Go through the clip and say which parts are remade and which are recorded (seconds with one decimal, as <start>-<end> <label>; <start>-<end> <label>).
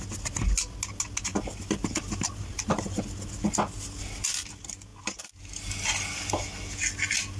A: 0.0-1.3 recorded; 1.3-4.3 remade; 4.3-7.4 recorded